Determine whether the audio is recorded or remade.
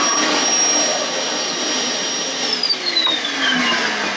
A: recorded